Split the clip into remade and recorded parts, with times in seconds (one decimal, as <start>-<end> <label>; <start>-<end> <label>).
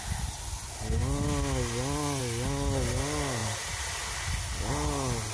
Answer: 0.0-5.3 recorded